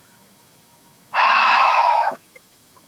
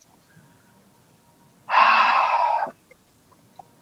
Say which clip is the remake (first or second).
first